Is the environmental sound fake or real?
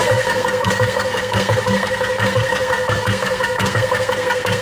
fake